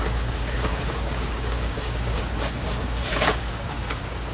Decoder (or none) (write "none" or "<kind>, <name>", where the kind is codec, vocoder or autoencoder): codec, DAC